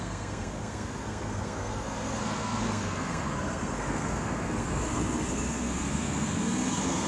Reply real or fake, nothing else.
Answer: fake